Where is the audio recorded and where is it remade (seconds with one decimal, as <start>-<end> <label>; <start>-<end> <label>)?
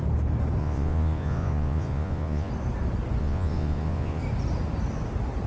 0.0-0.6 recorded; 0.6-2.5 remade; 2.5-3.2 recorded; 3.2-4.2 remade; 4.2-5.5 recorded